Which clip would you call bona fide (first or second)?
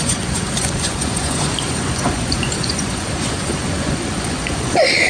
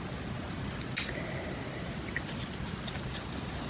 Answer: second